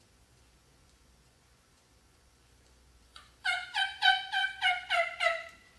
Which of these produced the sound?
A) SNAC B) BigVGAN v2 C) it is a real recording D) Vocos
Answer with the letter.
D